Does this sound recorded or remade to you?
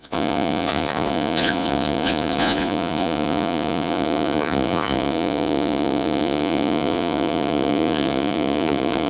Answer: remade